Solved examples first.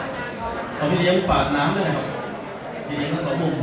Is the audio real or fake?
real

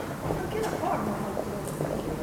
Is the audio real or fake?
real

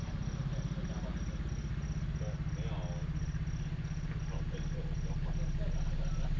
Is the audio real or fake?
real